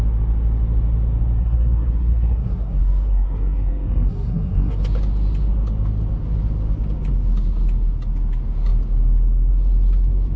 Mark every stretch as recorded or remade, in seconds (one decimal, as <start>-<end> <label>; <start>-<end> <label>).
0.0-1.4 recorded; 1.4-4.8 remade; 4.8-10.4 recorded